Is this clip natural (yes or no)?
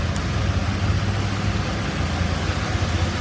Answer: yes